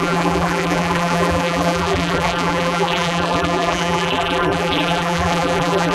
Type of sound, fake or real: fake